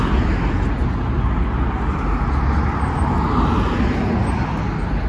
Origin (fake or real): real